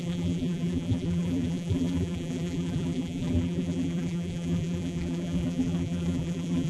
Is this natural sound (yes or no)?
no